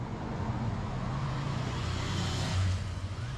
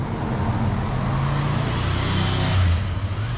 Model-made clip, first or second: first